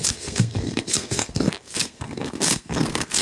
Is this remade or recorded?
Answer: remade